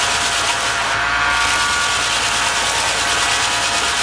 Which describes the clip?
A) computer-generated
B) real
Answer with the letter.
B